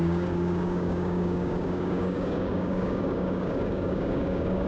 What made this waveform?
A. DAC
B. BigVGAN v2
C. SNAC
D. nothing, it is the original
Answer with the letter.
A